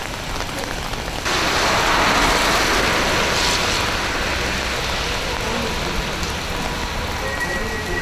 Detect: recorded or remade recorded